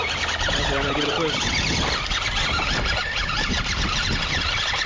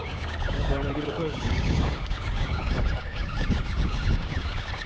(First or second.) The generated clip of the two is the second